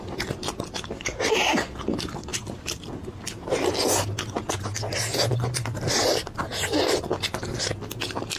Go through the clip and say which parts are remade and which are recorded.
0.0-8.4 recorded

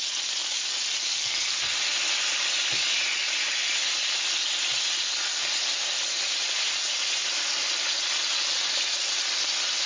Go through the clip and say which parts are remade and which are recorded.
0.0-9.9 recorded

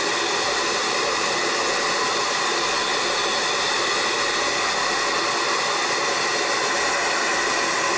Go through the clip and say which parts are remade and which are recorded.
0.0-8.0 recorded